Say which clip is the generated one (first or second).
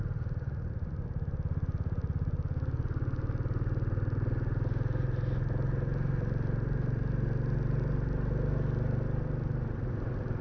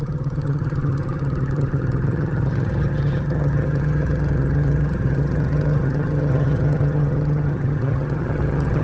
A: second